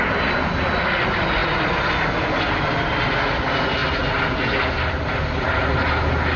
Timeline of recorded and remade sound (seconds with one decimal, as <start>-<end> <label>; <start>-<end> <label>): 0.0-6.4 recorded